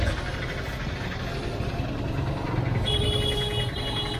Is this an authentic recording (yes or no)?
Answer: yes